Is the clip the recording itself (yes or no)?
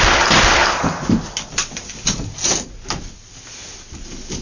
yes